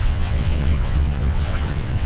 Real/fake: fake